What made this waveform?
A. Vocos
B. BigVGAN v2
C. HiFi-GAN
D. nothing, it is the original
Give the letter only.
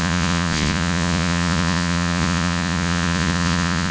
A